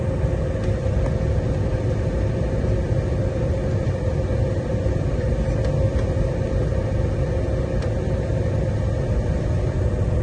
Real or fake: real